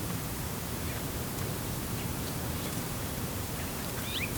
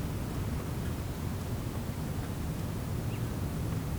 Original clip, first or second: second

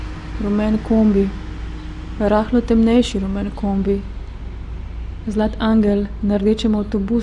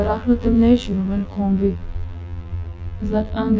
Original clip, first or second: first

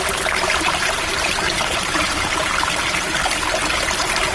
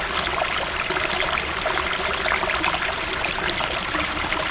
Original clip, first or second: second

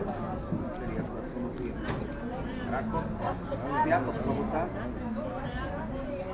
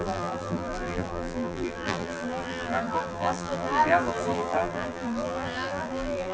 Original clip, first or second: first